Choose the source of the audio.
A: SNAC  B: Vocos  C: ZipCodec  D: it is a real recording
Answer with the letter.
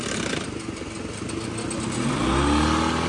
D